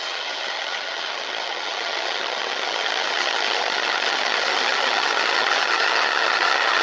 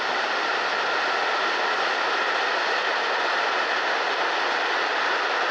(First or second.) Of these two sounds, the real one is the second